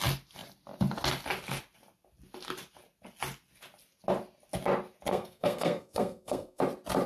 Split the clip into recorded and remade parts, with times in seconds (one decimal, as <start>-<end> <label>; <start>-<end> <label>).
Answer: 0.0-5.1 recorded; 5.1-6.6 remade; 6.6-7.1 recorded